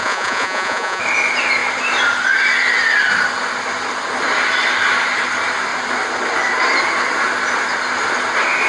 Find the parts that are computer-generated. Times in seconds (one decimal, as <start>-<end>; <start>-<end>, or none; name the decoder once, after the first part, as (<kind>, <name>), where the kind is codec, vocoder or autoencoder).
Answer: 0.0-1.0 (vocoder, Vocos)